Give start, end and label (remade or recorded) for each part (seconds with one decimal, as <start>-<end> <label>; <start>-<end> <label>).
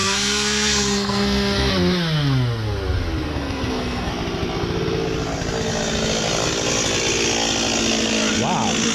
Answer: 0.0-1.7 remade; 1.7-3.3 recorded; 3.3-4.1 remade; 4.1-8.9 recorded